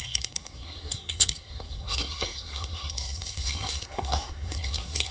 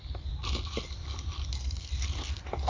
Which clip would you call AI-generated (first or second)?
first